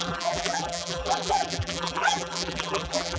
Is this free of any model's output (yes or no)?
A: no